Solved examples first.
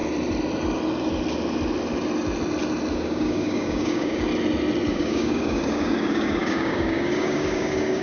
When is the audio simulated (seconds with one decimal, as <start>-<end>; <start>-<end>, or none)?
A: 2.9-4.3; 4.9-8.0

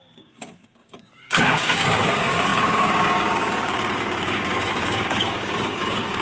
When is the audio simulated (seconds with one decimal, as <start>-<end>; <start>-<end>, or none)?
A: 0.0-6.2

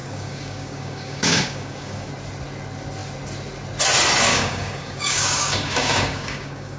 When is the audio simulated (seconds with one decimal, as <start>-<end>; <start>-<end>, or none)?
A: 0.0-2.1; 4.3-6.8